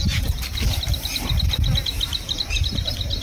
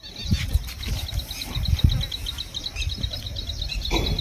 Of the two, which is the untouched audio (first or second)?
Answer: second